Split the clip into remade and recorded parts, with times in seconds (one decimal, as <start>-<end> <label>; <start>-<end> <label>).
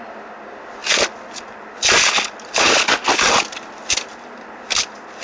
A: 0.0-5.2 recorded